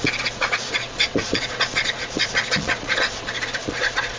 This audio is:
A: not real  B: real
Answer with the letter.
A